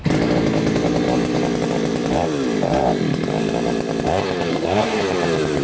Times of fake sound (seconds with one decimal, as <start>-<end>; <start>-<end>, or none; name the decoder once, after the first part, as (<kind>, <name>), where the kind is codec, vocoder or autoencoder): 4.5-5.0 (codec, SNAC)